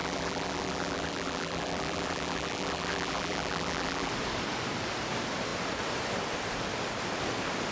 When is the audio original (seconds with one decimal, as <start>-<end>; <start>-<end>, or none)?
4.1-7.7